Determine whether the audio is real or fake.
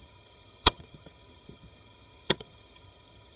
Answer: fake